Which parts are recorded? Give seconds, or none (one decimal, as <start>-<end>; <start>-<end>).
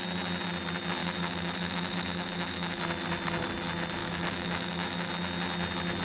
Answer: 0.0-1.0; 2.8-4.0; 5.1-6.0